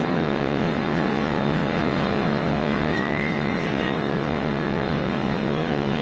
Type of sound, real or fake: fake